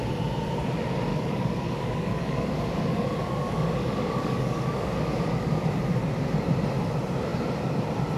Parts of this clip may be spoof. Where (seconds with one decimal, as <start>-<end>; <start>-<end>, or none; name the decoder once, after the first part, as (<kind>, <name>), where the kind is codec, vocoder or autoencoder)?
1.1-5.7 (codec, DAC)